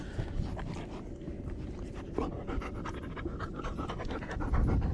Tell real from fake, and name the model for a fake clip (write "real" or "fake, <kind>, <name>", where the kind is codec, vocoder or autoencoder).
real